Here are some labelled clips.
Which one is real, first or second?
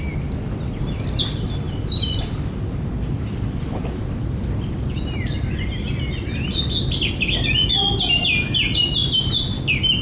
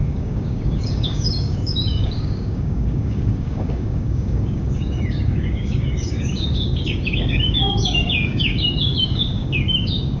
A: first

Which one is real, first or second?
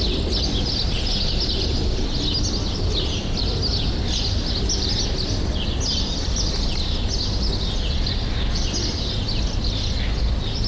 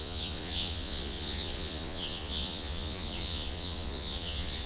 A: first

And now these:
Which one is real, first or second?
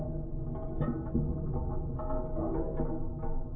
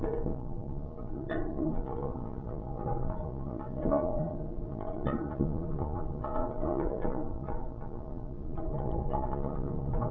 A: first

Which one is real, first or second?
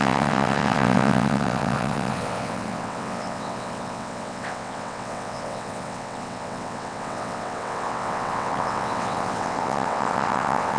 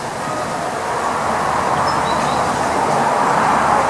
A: second